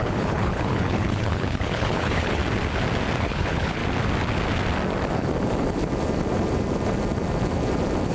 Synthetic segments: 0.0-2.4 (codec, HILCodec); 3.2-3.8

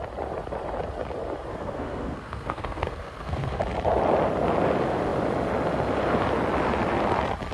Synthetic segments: 1.5-3.6 (codec, SNAC)